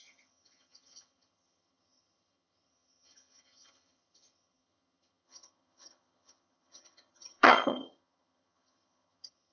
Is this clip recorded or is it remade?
remade